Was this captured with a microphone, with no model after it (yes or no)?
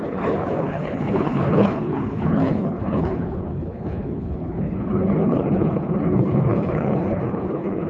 no